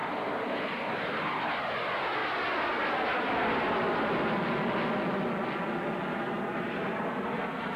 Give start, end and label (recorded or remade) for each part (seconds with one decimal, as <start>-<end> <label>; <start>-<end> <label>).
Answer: 0.0-7.8 recorded